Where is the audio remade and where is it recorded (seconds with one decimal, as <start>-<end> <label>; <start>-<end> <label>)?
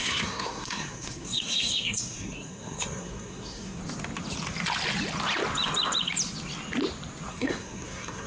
0.0-3.8 remade; 3.8-7.3 recorded; 7.3-8.3 remade